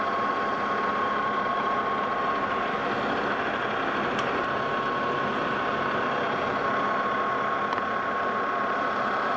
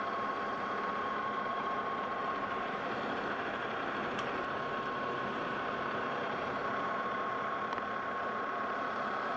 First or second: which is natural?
first